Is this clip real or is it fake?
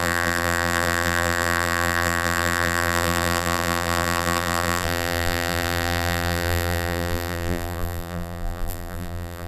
fake